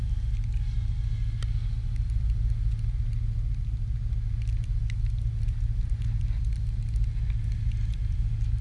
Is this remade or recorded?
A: recorded